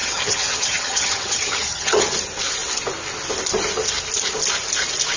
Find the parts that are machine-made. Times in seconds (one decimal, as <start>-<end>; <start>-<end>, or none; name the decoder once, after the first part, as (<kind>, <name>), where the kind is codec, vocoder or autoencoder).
0.0-2.0 (vocoder, HiFi-GAN)